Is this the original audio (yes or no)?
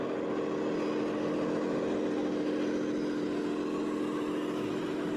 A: yes